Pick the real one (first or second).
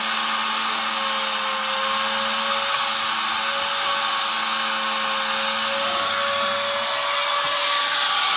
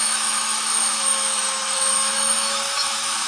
first